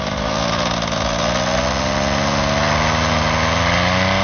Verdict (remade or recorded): recorded